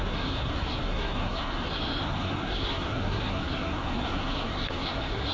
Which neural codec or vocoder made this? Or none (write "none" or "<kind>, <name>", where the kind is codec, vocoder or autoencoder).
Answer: codec, SNAC